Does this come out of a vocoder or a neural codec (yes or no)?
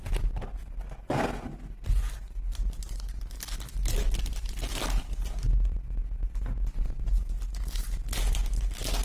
no